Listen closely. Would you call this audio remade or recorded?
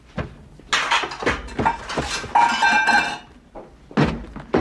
recorded